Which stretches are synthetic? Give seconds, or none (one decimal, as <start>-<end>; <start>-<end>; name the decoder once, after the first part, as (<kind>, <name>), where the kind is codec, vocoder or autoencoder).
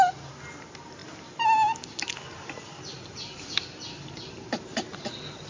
none